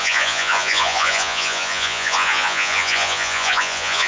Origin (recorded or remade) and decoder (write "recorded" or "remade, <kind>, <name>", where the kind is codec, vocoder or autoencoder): remade, vocoder, Vocos